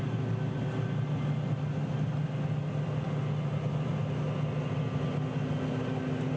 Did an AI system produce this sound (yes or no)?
no